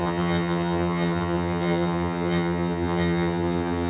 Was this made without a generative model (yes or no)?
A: no